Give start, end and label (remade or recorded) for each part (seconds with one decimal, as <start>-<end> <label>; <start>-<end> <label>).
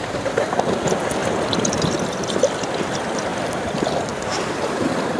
0.0-1.2 recorded; 1.2-2.3 remade; 2.3-3.3 recorded; 3.3-5.2 remade